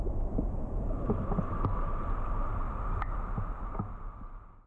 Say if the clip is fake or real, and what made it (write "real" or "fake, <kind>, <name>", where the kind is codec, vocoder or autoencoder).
real